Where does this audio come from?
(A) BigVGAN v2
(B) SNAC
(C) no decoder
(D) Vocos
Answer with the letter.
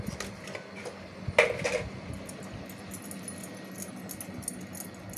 C